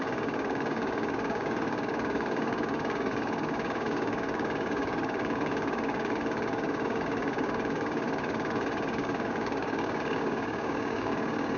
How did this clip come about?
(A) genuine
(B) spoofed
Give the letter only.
B